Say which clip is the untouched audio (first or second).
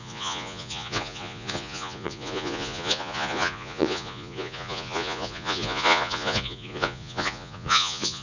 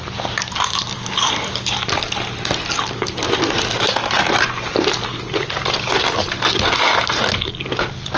second